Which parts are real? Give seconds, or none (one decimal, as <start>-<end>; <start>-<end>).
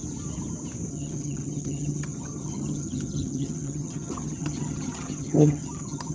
0.0-0.9